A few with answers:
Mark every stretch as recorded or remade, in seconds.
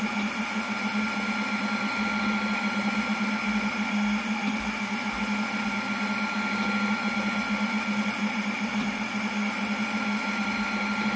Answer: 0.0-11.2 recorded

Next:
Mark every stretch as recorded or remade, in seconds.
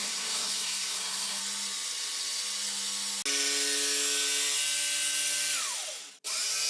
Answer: 0.0-1.4 remade; 1.4-6.7 recorded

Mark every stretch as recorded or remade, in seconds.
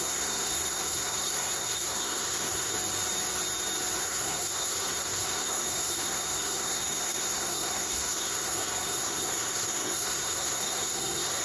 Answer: 0.0-2.7 remade; 2.7-4.0 recorded; 4.0-11.4 remade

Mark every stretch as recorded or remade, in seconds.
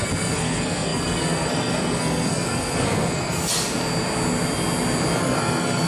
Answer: 0.0-3.4 remade; 3.4-5.2 recorded; 5.2-5.9 remade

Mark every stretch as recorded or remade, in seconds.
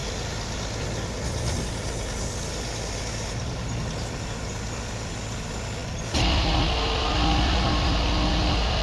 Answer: 0.0-8.8 recorded